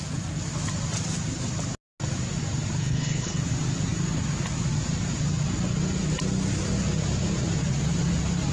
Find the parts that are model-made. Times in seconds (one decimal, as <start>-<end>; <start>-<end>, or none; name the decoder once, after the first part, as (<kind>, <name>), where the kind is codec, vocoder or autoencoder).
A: 2.8-3.4 (codec, HILCodec)